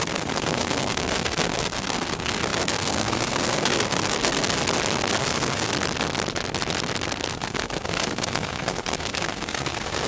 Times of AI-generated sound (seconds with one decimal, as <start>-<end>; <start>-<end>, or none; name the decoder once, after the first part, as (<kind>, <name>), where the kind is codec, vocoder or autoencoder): 0.0-4.6 (codec, SNAC); 5.2-5.7; 7.3-10.1